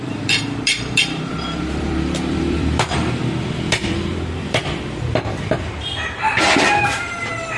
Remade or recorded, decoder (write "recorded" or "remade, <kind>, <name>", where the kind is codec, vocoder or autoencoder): remade, vocoder, BigVGAN v2